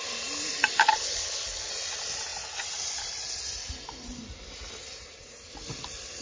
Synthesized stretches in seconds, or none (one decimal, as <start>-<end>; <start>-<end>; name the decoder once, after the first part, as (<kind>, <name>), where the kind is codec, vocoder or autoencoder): 0.8-1.7 (codec, HILCodec)